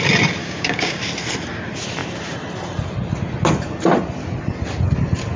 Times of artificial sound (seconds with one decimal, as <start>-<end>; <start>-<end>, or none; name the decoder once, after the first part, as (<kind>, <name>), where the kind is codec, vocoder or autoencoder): 0.4-1.0 (codec, DAC)